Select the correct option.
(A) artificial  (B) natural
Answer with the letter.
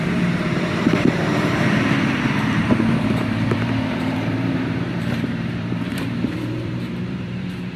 A